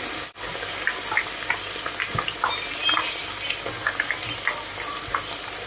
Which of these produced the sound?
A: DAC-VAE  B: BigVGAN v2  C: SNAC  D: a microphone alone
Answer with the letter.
D